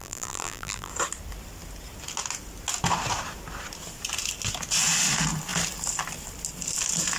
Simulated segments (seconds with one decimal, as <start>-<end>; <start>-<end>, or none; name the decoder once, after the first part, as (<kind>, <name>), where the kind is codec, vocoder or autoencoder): 0.0-0.9 (vocoder, BigVGAN v2)